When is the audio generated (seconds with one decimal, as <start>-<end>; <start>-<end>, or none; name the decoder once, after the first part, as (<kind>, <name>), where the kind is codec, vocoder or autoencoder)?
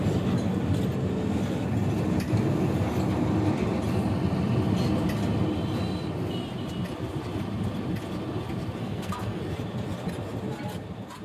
8.8-9.4 (codec, SNAC)